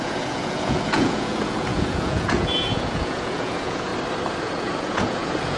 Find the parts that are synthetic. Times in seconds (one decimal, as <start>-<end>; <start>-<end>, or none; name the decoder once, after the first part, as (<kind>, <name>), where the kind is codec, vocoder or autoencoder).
0.0-3.9 (vocoder, Vocos); 4.4-5.6